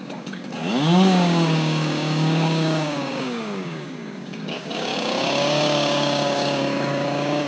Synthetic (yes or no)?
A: yes